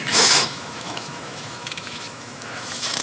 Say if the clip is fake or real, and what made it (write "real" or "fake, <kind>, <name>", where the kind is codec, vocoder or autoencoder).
fake, autoencoder, DAC-VAE